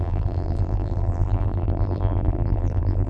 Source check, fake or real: fake